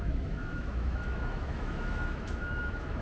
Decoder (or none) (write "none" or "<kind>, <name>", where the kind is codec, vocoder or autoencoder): autoencoder, DAC-VAE